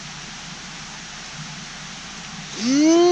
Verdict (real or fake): real